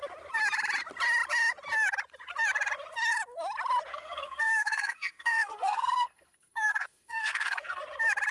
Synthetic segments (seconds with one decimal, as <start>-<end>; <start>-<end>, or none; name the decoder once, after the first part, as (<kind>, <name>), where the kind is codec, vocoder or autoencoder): 3.9-7.8 (codec, SNAC)